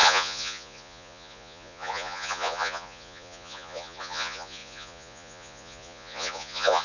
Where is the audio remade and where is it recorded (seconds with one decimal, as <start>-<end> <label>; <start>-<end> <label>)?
0.0-6.8 remade